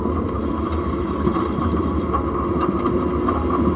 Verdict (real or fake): real